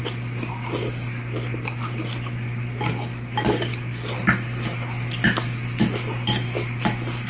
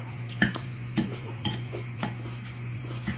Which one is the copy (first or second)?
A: second